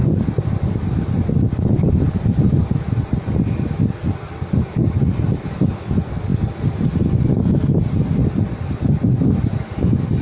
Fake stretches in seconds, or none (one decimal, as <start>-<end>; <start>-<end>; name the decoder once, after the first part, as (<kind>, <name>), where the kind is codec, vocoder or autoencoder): none